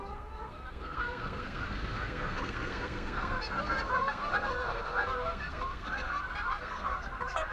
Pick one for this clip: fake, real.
fake